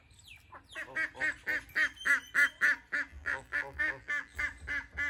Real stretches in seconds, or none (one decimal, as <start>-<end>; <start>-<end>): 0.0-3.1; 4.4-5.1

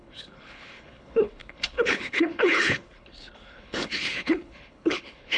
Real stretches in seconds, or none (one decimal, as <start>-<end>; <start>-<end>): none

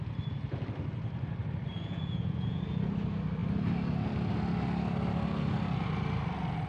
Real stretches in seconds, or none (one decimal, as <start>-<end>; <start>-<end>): 0.0-1.7; 2.8-6.7